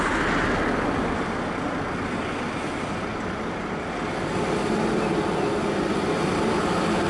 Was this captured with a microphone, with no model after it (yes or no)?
yes